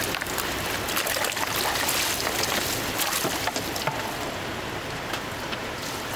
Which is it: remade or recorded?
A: recorded